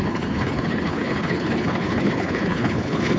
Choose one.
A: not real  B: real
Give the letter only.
A